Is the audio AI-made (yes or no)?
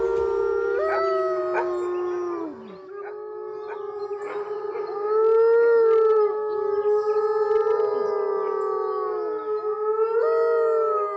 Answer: no